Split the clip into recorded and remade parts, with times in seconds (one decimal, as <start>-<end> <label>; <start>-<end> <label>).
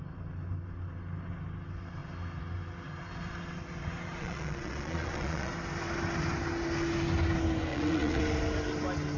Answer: 0.0-4.2 recorded; 4.2-5.5 remade; 5.5-7.7 recorded; 7.7-8.2 remade; 8.2-9.2 recorded